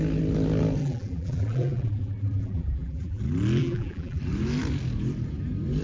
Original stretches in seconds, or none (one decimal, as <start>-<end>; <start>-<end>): 0.0-0.8; 3.2-3.6; 4.2-5.8